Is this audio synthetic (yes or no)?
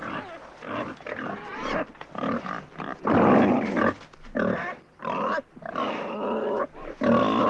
no